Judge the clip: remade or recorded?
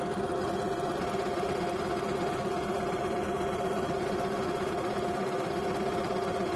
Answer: remade